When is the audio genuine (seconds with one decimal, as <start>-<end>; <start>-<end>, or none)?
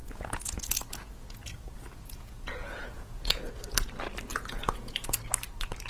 3.5-4.3; 5.2-5.9